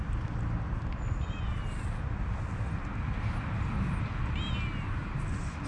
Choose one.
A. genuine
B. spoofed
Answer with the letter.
A